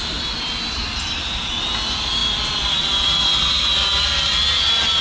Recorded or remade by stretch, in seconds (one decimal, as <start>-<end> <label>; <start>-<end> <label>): 0.0-5.0 recorded